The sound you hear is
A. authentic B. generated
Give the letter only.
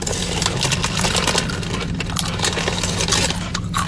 A